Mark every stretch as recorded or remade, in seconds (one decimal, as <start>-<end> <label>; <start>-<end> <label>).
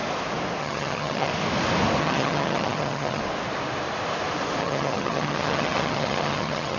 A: 0.0-0.6 recorded; 0.6-1.3 remade; 1.3-2.0 recorded; 2.0-3.2 remade; 3.2-4.6 recorded; 4.6-6.8 remade